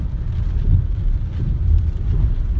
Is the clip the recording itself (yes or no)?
yes